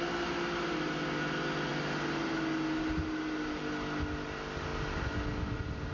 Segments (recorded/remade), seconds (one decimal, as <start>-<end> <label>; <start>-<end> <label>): 0.0-5.9 recorded